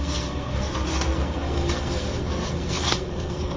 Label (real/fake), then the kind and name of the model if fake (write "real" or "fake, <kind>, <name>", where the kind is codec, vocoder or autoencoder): fake, codec, SNAC